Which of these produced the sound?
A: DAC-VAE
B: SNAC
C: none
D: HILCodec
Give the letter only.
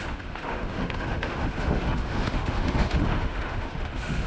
A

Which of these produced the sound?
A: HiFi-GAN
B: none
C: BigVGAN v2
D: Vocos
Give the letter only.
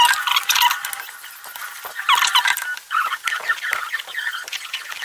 B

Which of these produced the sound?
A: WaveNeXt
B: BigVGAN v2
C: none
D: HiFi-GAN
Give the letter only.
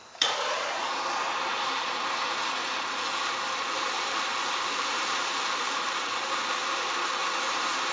B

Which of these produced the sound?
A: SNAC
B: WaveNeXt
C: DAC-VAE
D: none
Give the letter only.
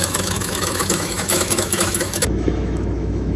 C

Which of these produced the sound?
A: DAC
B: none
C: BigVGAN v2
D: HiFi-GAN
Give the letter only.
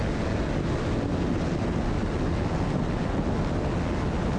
B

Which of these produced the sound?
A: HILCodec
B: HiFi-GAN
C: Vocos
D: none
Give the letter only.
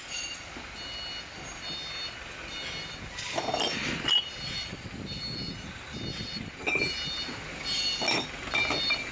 D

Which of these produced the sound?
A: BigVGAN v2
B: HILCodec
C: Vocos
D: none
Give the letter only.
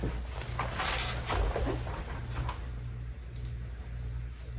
D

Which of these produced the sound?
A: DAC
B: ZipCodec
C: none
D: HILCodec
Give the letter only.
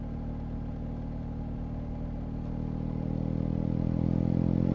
C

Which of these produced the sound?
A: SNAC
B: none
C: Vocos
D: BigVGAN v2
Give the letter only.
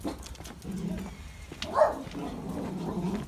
B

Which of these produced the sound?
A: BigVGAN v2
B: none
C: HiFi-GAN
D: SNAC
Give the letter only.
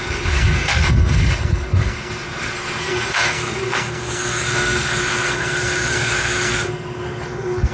D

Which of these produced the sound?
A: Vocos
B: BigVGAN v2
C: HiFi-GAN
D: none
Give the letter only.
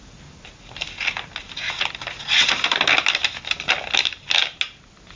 D